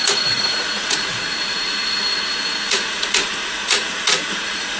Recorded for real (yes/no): no